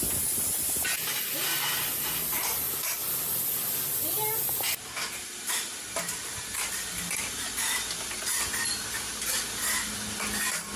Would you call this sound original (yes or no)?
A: yes